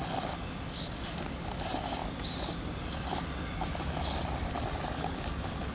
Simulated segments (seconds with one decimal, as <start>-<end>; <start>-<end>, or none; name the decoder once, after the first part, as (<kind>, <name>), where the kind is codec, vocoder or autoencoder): none